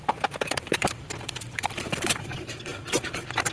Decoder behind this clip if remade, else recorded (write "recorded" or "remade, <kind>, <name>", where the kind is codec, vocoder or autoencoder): remade, vocoder, BigVGAN v2